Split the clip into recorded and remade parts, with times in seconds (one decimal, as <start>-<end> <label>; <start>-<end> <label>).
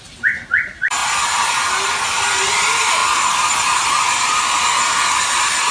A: 0.0-5.7 recorded